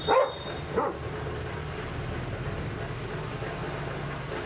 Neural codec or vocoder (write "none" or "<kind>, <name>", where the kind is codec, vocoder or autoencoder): none